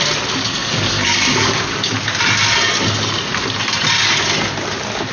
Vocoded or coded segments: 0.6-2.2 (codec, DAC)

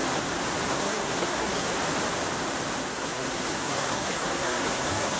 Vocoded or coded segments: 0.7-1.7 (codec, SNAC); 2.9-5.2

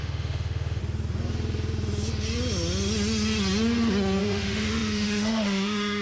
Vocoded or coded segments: 0.0-0.8 (autoencoder, DAC-VAE); 4.2-6.0

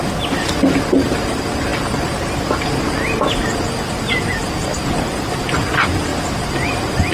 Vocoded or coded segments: none